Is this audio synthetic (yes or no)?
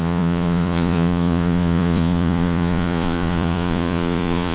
yes